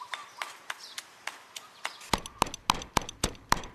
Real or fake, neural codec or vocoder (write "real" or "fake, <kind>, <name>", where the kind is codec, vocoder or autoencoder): real